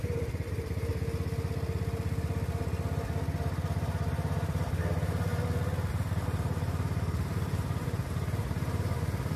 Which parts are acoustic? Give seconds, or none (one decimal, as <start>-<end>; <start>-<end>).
0.9-3.4; 5.3-5.9